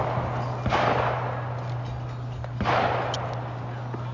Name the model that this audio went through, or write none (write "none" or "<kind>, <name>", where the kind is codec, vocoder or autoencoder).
none